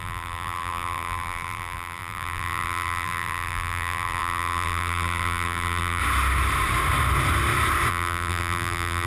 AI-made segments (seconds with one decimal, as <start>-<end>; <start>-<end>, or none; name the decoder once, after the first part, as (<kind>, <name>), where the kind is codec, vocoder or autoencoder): 0.0-6.0 (vocoder, BigVGAN v2); 7.9-9.1